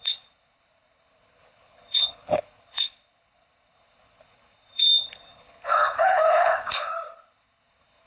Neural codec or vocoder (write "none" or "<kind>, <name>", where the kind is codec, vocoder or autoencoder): codec, HILCodec